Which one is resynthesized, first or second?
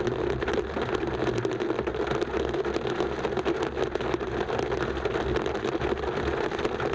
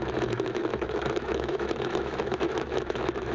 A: second